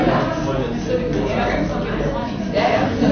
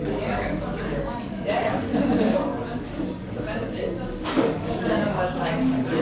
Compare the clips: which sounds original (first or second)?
first